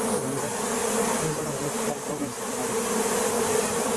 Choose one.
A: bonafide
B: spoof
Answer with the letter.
A